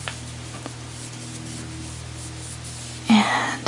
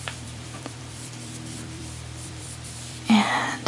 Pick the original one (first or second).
first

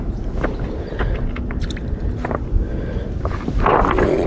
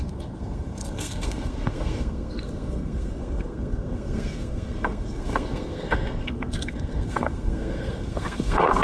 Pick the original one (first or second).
first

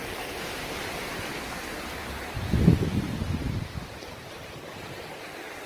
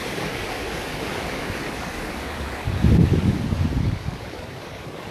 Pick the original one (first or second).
first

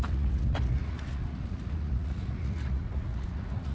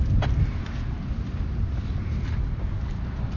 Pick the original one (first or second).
second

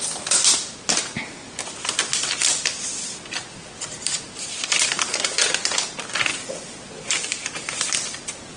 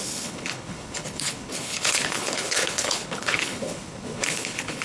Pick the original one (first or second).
first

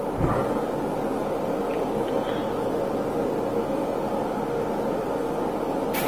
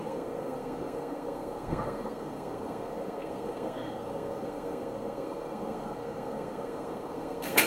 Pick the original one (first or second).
first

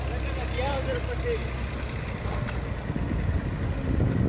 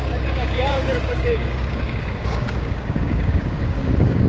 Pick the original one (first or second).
first